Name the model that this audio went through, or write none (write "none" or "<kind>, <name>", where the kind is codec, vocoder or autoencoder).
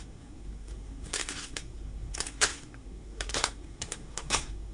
codec, SNAC